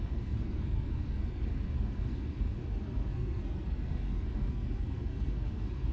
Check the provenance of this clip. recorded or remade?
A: remade